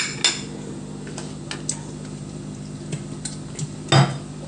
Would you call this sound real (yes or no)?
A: yes